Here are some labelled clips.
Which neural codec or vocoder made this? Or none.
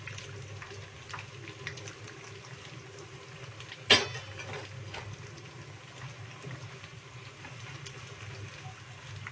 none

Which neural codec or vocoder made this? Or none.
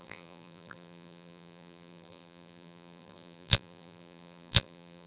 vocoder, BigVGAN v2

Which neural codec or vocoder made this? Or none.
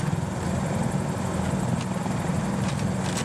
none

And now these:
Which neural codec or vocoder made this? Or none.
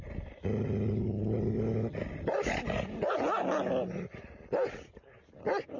none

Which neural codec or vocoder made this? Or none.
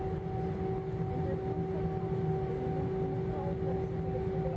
none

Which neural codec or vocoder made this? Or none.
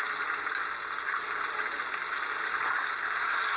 none